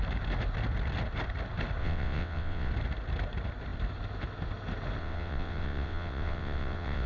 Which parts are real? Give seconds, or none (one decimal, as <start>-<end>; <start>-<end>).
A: 0.0-1.8; 2.7-5.0